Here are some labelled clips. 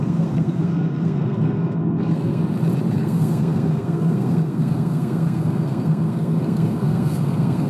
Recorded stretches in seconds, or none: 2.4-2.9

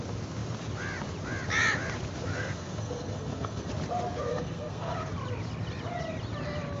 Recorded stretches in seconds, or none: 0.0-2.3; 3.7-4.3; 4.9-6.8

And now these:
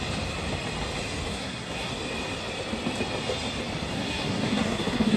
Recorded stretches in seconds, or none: 0.0-1.3; 1.9-3.9